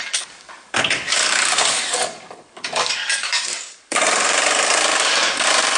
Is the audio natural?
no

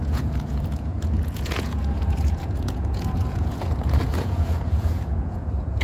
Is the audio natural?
no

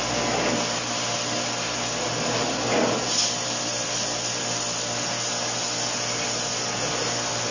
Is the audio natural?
yes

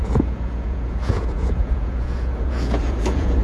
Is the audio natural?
no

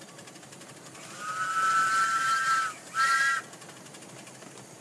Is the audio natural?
yes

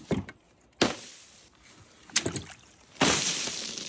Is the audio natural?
yes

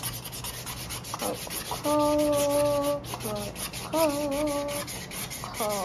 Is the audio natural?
yes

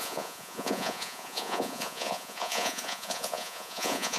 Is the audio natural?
no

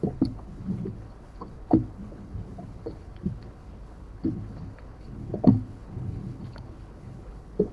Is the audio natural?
no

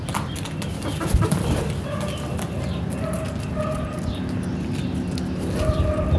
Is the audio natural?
yes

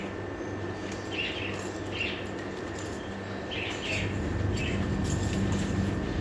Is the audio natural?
no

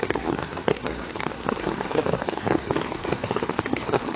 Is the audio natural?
no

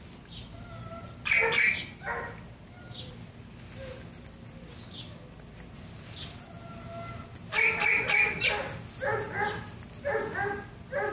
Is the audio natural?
yes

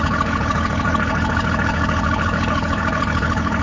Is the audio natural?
no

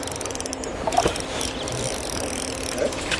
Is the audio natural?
yes